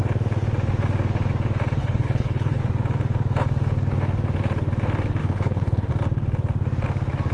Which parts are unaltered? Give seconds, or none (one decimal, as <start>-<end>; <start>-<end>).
0.0-1.8; 2.6-5.2; 5.9-7.3